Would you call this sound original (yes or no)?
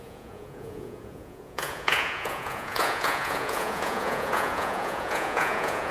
no